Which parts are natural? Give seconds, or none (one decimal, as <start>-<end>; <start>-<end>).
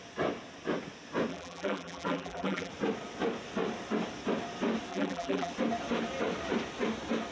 0.0-1.3; 2.7-4.9; 5.5-7.3